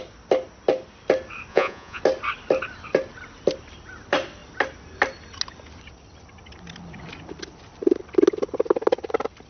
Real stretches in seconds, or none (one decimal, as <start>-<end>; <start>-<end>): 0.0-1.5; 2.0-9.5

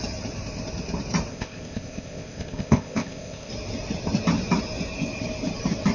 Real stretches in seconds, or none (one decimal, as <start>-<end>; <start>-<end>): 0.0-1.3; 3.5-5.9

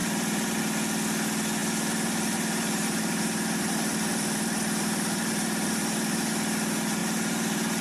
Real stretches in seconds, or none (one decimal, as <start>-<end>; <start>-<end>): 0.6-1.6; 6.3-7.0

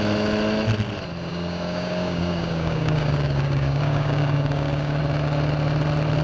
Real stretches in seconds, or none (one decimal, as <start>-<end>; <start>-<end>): 0.0-1.3; 5.0-6.2

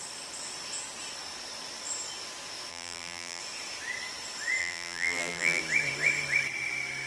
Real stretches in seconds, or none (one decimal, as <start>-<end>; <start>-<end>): 0.0-2.7; 3.4-4.6; 5.6-7.1

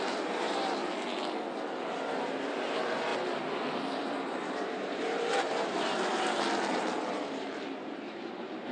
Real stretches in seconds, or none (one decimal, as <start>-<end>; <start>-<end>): 0.8-2.1

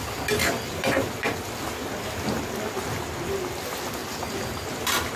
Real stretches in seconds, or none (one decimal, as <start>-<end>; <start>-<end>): 0.0-5.2